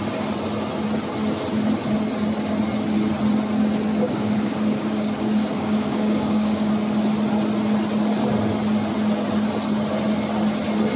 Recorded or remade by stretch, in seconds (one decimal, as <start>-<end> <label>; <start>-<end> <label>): 0.0-3.9 recorded; 3.9-6.7 remade; 6.7-11.0 recorded